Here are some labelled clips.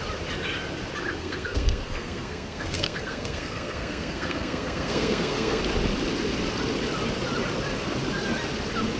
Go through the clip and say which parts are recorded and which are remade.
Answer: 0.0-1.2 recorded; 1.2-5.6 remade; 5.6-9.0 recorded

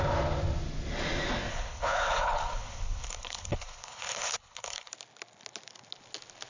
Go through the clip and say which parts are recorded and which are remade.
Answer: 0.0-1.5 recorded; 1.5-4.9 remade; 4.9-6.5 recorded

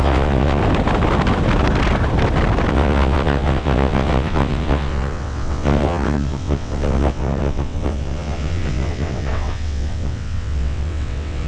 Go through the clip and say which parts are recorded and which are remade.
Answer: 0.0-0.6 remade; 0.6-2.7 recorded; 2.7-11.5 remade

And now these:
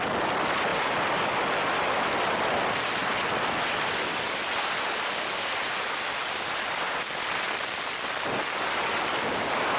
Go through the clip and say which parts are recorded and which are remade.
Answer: 0.0-9.8 recorded

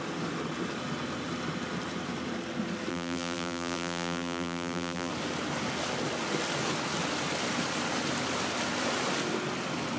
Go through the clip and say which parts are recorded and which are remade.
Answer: 0.0-2.9 recorded; 2.9-5.1 remade; 5.1-10.0 recorded

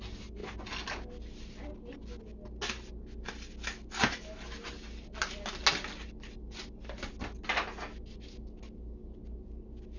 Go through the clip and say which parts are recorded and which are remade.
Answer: 0.0-10.0 recorded

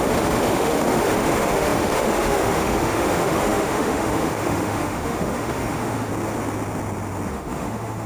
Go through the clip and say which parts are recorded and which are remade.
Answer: 0.0-6.1 remade; 6.1-7.3 recorded; 7.3-8.1 remade

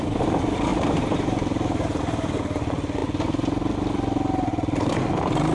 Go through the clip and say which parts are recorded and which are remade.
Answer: 0.0-0.7 recorded; 0.7-2.0 remade; 2.0-4.5 recorded; 4.5-5.0 remade; 5.0-5.5 recorded